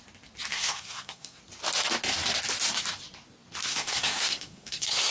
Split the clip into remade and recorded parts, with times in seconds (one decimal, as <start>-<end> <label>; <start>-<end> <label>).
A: 0.0-0.5 recorded; 0.5-1.4 remade; 1.4-3.6 recorded; 3.6-5.1 remade